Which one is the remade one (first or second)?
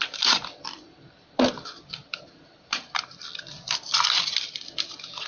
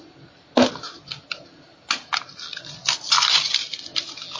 first